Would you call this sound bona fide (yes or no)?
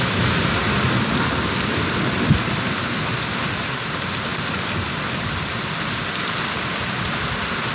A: yes